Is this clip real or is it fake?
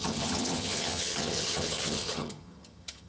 fake